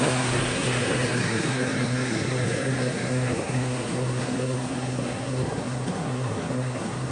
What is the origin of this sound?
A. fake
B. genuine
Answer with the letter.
A